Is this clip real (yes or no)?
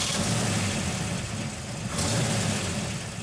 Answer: yes